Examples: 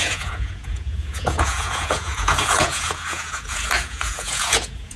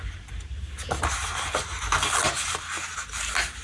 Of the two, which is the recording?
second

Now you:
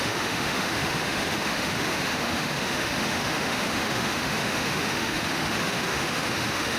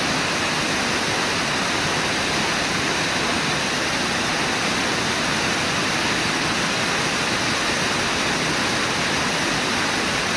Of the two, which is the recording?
second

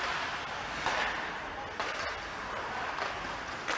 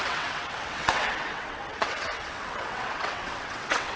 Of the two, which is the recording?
first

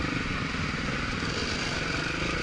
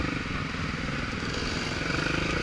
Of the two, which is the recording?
second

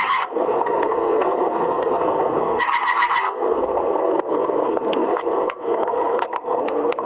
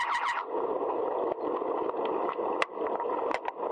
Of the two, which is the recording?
second